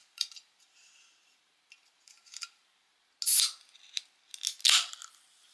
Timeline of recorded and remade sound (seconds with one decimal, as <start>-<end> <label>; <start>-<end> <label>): 0.0-3.1 remade; 3.1-5.5 recorded